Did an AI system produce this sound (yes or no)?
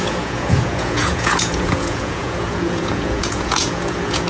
yes